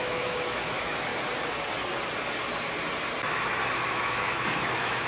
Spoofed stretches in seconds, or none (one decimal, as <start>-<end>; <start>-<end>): 0.0-1.1; 3.9-5.1